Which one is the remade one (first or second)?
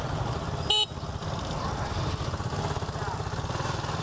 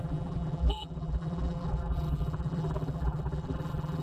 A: second